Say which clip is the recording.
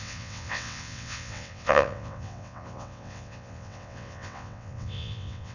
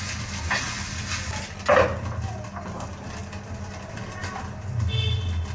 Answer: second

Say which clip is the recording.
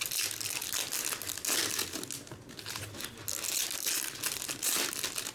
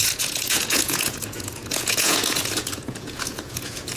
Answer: first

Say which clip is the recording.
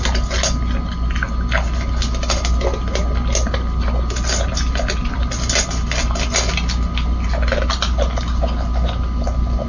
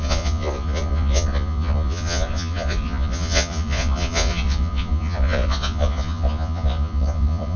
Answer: first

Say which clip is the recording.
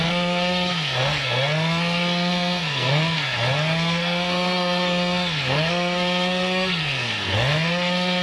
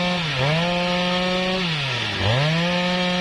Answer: second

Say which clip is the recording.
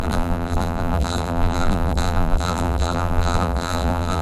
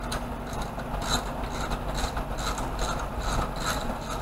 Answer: second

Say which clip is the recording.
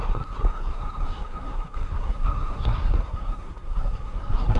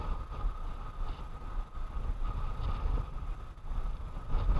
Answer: second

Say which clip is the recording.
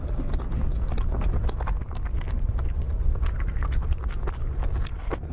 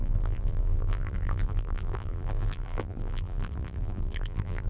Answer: first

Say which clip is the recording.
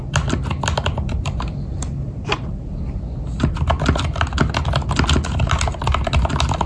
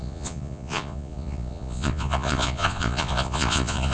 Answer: first